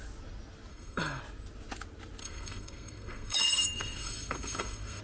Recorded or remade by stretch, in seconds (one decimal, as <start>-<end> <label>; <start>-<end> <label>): 0.0-0.7 recorded; 0.7-1.2 remade; 1.2-2.2 recorded; 2.2-5.0 remade